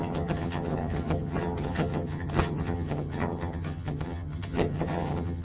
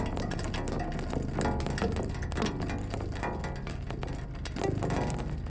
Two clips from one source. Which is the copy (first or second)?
first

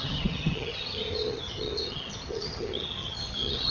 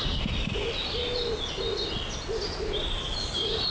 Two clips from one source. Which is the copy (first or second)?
first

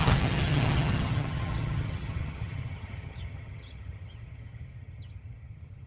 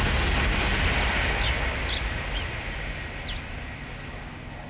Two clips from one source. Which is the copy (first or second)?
first